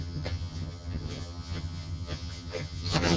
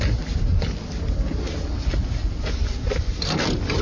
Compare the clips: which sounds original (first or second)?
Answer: second